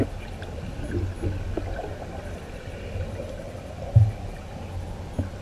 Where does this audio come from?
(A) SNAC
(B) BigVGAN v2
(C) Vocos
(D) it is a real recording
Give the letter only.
D